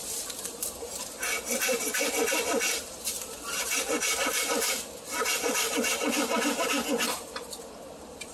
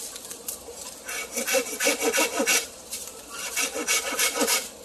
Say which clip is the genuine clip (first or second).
first